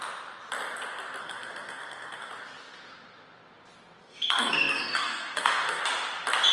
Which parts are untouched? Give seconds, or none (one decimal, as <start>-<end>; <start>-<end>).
0.0-1.2; 2.3-4.0; 5.8-6.5